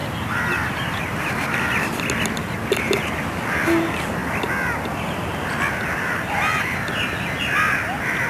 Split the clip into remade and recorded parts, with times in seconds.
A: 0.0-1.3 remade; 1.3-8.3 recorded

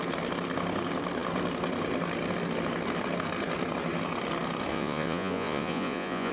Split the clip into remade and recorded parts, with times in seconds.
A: 0.0-4.7 recorded; 4.7-6.3 remade